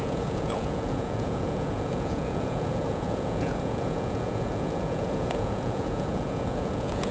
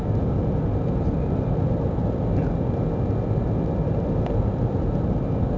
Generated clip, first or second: first